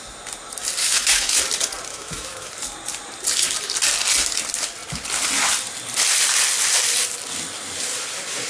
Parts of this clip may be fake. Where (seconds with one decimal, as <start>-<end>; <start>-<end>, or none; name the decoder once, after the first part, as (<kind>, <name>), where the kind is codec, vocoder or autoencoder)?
0.8-1.4 (autoencoder, DAC-VAE); 1.9-2.5